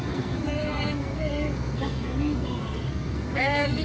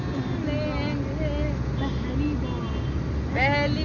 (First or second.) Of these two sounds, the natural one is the second